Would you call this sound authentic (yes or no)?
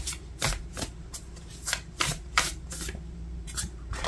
no